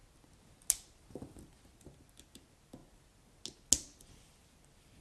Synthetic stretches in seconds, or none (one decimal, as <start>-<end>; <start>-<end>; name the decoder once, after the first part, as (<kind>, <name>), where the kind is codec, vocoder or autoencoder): none